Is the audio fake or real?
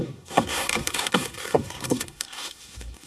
fake